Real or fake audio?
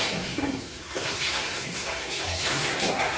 fake